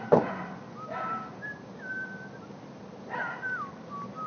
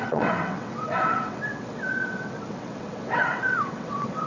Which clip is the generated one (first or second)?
second